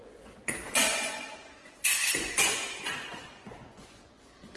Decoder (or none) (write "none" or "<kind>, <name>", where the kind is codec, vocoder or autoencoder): vocoder, Vocos